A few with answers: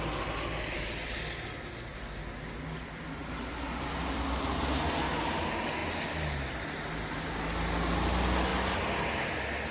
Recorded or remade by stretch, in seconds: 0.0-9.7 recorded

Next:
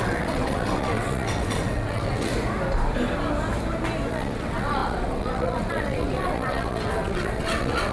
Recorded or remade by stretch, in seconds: 0.0-2.3 remade; 2.3-4.1 recorded; 4.1-7.9 remade

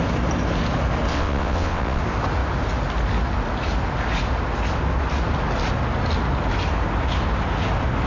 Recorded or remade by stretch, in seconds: 0.0-1.1 recorded; 1.1-2.0 remade; 2.0-8.1 recorded

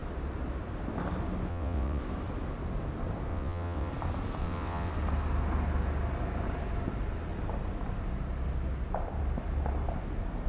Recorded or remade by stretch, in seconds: 0.0-1.5 recorded; 1.5-2.0 remade; 2.0-3.3 recorded; 3.3-3.9 remade; 3.9-4.4 recorded; 4.4-4.9 remade; 4.9-10.5 recorded

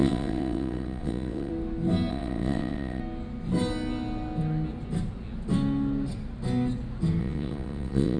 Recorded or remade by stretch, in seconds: 0.0-1.5 remade; 1.5-2.1 recorded; 2.1-3.0 remade; 3.0-7.2 recorded; 7.2-8.2 remade

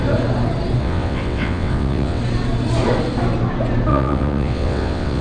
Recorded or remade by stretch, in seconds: 0.0-0.8 recorded; 0.8-2.2 remade; 2.2-3.9 recorded; 3.9-5.2 remade

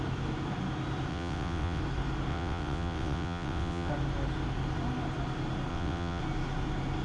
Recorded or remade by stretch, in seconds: 0.0-1.1 recorded; 1.1-1.8 remade; 1.8-2.3 recorded; 2.3-3.9 remade; 3.9-5.7 recorded; 5.7-6.2 remade; 6.2-7.0 recorded

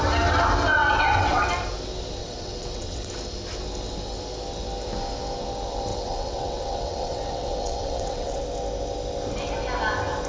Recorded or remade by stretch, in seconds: 0.0-0.7 recorded; 0.7-1.5 remade; 1.5-2.2 recorded; 2.2-3.1 remade; 3.1-5.9 recorded; 5.9-8.4 remade; 8.4-10.3 recorded